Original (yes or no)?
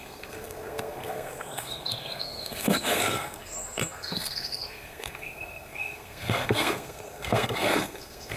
no